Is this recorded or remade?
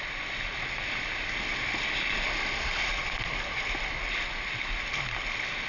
recorded